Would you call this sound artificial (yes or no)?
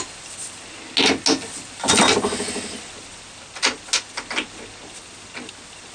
no